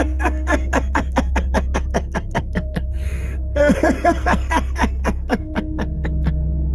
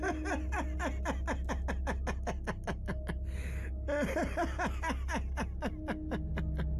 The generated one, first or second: first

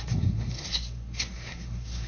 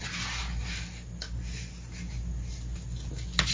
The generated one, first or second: first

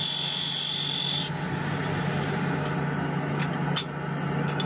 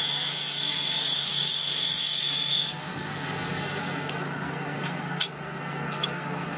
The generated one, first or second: second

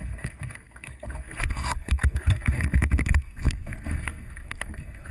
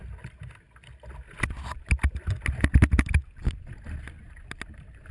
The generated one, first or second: first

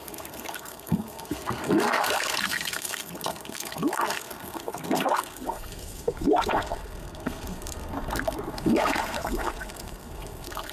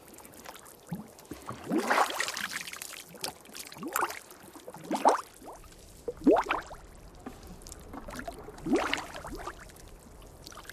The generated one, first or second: first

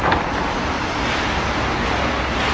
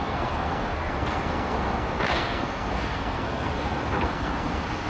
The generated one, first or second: second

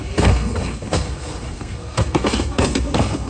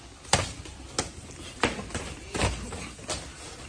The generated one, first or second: first